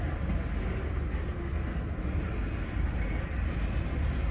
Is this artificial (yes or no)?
no